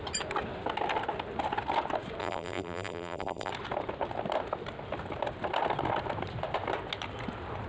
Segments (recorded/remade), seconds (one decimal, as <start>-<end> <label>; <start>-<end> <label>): 0.0-2.2 recorded; 2.2-3.5 remade; 3.5-7.7 recorded